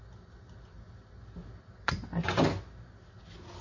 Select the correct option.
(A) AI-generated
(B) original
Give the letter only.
B